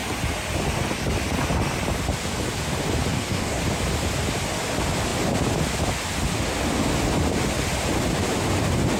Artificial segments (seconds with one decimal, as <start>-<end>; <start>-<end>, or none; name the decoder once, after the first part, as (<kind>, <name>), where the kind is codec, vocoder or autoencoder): 3.1-3.6 (codec, DAC)